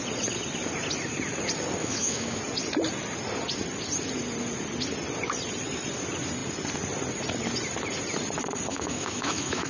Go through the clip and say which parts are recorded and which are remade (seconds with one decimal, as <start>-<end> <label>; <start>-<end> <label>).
0.0-1.8 recorded; 1.8-2.4 remade; 2.4-8.7 recorded; 8.7-9.7 remade